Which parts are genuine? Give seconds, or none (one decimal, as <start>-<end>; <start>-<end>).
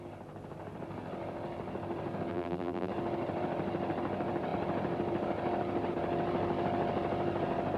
0.0-2.3; 2.9-7.8